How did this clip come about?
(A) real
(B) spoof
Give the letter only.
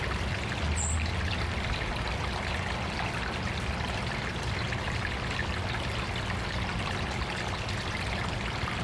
A